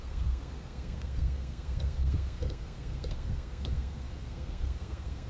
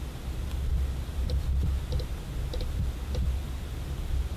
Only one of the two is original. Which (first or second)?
second